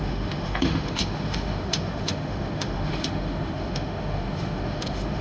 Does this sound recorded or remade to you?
remade